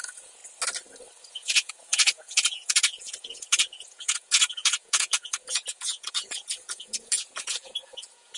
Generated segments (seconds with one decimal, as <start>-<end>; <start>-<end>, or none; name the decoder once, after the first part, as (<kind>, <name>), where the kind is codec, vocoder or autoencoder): 0.0-0.4 (vocoder, Vocos); 1.3-8.4

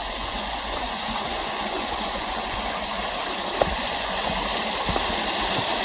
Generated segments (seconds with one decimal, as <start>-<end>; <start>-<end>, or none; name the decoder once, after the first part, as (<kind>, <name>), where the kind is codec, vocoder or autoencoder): 0.0-3.0 (vocoder, Vocos); 3.7-4.4

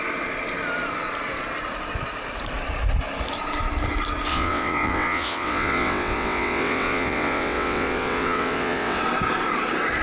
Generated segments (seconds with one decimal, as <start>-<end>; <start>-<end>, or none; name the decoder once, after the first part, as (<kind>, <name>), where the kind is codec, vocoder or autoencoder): 4.3-9.0 (vocoder, WaveNeXt)

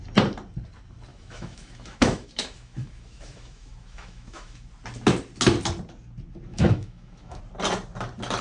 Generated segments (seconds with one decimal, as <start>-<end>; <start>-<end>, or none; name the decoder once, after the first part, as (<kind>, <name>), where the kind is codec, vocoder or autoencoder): 1.1-4.7 (autoencoder, DAC-VAE); 6.5-7.4

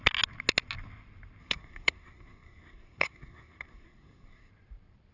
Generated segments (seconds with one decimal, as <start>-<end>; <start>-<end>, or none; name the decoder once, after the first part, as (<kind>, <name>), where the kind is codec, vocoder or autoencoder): 1.4-4.5 (codec, SNAC)

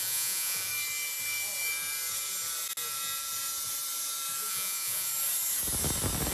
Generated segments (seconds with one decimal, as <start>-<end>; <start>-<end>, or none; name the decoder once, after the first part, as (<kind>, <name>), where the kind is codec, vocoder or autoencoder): 0.0-0.7 (vocoder, Vocos); 4.5-5.1